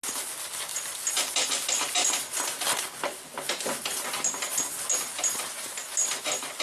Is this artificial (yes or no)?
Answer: no